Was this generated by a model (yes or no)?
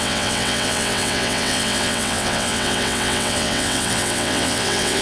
yes